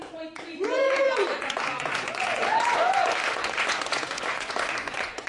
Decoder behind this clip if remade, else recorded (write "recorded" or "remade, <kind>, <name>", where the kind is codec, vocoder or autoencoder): remade, vocoder, Vocos